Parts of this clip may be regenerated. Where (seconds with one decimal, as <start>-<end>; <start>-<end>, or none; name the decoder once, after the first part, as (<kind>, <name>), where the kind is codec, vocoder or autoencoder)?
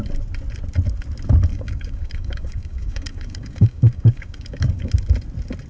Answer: 1.5-4.9 (codec, DAC)